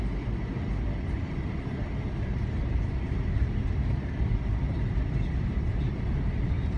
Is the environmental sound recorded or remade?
remade